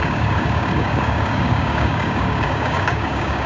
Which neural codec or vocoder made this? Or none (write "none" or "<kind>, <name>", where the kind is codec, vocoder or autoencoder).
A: codec, DAC